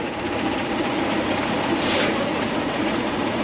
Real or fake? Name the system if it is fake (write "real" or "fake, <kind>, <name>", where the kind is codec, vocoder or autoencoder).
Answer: fake, vocoder, Vocos